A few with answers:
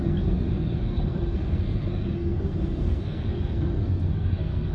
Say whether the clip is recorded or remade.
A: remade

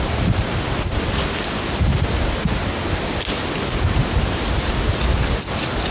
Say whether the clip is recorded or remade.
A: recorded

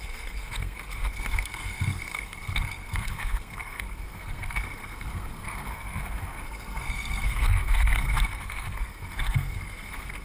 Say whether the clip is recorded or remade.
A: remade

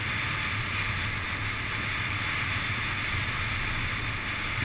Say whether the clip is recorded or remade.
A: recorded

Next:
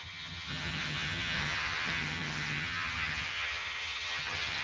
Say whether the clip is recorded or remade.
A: remade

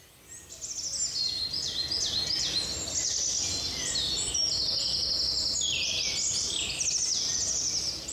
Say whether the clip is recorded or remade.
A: recorded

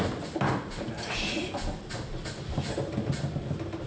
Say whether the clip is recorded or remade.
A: recorded